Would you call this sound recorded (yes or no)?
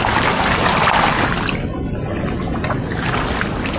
yes